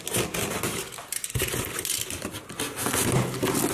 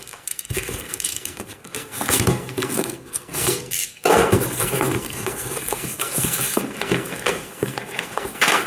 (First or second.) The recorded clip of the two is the first